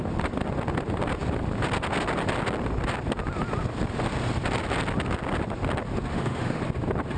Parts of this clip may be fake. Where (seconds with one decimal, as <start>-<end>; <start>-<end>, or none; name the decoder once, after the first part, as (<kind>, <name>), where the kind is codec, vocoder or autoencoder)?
6.1-6.6 (autoencoder, DAC-VAE)